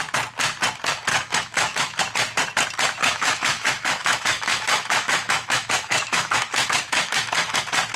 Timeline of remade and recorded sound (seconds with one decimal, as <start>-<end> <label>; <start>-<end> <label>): 0.0-1.1 recorded; 1.1-2.0 remade; 2.0-3.0 recorded; 3.0-7.6 remade; 7.6-8.0 recorded